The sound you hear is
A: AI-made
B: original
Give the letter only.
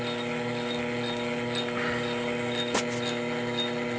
B